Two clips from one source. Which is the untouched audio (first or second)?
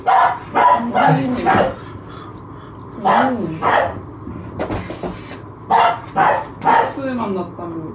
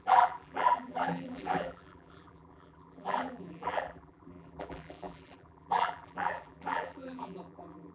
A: first